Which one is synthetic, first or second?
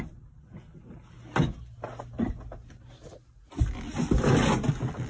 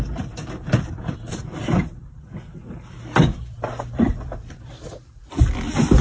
second